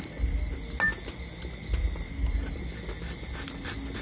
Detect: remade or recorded recorded